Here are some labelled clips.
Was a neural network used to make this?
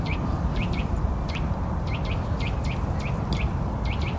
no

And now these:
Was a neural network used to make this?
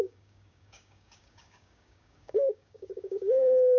yes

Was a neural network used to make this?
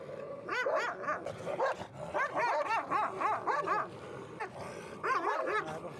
no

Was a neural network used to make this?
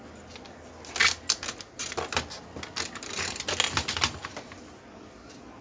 no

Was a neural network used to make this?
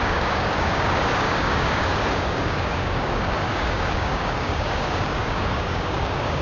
yes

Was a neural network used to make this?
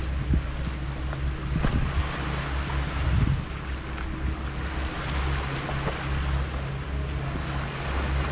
no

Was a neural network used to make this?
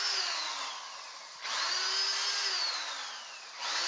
no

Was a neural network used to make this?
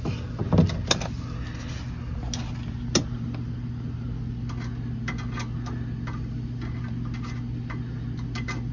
no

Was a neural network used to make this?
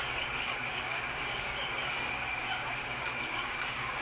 yes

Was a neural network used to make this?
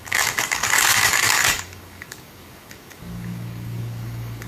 yes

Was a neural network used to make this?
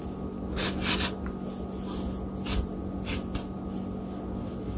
no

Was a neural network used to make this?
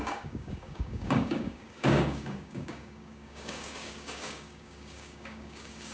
yes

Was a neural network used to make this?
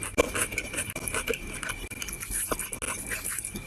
no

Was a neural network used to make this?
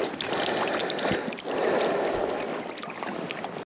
no